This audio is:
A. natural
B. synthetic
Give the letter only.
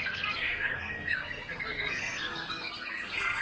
B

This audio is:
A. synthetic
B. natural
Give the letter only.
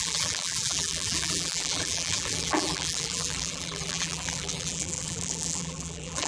A